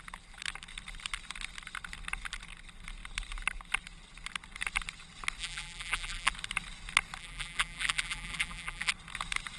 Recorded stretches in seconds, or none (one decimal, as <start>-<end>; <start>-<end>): 0.0-5.4; 6.3-7.2; 8.9-9.6